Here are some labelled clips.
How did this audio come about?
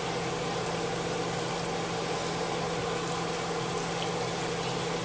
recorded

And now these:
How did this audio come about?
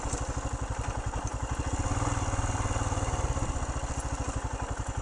recorded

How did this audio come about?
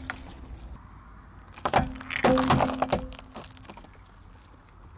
recorded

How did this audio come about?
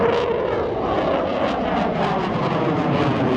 recorded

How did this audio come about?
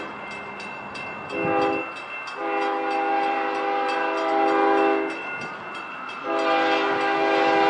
recorded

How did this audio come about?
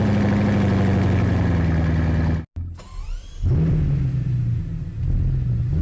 recorded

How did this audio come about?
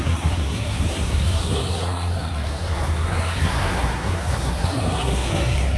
remade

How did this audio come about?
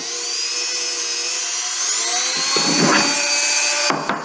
recorded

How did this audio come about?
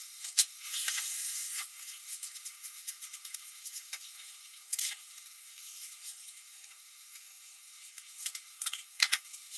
remade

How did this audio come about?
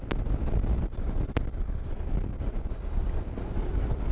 recorded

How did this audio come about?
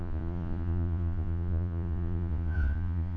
remade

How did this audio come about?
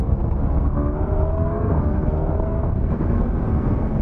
remade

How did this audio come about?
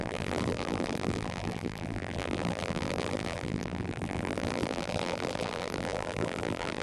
remade